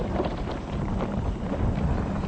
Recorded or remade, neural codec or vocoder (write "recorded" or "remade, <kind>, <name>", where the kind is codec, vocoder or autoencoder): recorded